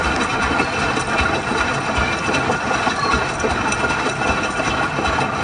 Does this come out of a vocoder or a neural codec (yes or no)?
no